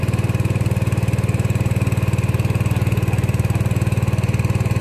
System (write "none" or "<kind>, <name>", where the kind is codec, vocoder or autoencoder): none